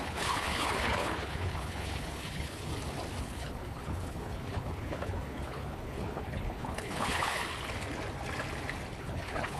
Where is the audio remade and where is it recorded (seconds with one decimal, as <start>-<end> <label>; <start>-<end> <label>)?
0.0-2.7 remade; 2.7-3.2 recorded; 3.2-7.4 remade; 7.4-9.0 recorded; 9.0-9.6 remade